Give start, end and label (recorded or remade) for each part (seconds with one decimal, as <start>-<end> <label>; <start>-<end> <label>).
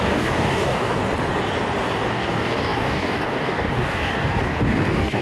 0.0-1.0 remade; 1.0-2.1 recorded; 2.1-5.2 remade